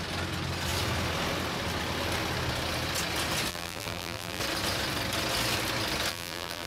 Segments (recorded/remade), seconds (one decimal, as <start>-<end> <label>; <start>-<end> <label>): 0.0-3.5 recorded; 3.5-4.4 remade; 4.4-6.1 recorded; 6.1-6.7 remade